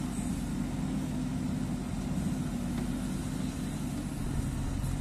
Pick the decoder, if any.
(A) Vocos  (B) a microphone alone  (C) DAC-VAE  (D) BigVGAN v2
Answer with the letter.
B